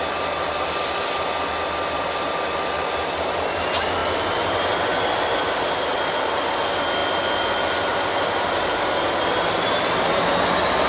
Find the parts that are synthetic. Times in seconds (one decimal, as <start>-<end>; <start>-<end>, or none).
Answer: none

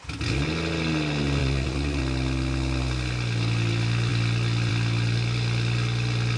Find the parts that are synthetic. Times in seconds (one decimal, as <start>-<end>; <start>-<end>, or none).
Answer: 1.4-2.0

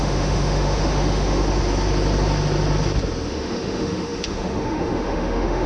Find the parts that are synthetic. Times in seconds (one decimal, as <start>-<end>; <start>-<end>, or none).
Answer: 0.0-1.4; 3.3-5.7

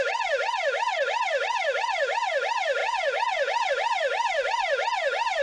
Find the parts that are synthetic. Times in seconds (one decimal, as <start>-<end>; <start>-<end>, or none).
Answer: 2.8-3.7

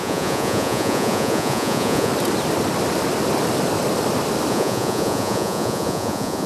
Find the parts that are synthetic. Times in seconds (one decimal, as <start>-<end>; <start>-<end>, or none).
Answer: 0.0-2.1; 4.5-6.5

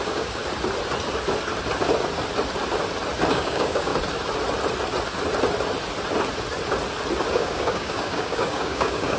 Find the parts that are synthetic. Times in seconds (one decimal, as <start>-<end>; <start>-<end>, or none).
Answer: 0.0-0.4; 3.3-3.9; 7.3-9.2

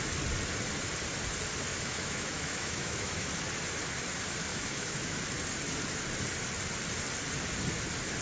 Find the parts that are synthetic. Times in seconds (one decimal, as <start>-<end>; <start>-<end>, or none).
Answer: 1.7-3.3; 4.5-5.2